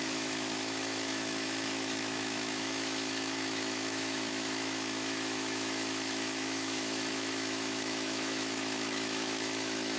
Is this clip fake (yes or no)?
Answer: yes